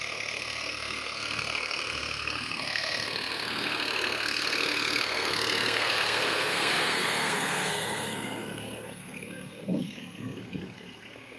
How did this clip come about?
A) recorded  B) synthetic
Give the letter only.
B